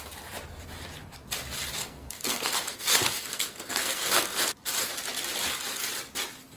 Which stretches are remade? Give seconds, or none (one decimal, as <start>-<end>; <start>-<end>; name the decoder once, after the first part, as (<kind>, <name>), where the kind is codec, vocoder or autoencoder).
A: 1.8-4.4 (codec, SNAC)